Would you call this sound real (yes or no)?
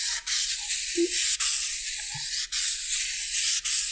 yes